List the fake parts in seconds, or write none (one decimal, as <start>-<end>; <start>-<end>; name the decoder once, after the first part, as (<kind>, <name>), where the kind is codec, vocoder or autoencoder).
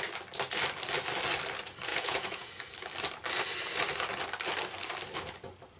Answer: 1.9-2.5 (vocoder, Vocos)